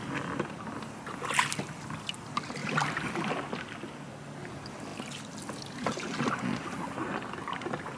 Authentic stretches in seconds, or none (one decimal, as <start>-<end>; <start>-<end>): 0.0-2.6; 3.3-8.0